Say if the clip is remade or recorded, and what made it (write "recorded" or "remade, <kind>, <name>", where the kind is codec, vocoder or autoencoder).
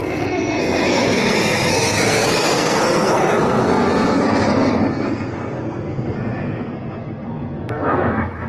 remade, codec, SNAC